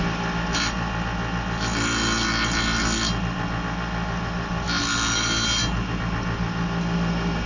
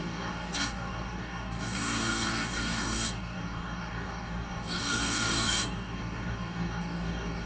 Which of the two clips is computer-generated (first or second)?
second